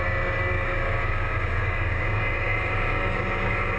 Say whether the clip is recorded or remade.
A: remade